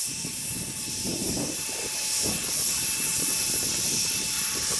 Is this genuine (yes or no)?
no